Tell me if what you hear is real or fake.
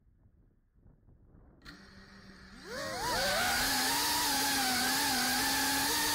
real